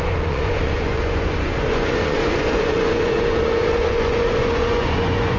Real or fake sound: fake